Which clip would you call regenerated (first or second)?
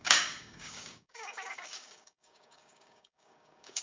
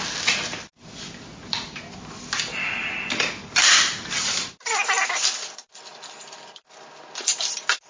first